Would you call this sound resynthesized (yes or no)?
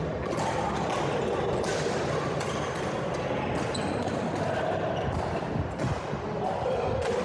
no